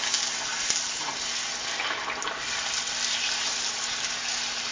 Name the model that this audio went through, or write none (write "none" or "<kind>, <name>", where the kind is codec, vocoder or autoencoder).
none